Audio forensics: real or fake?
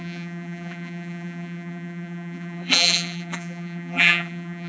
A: fake